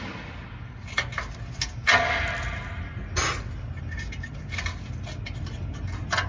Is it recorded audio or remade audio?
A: recorded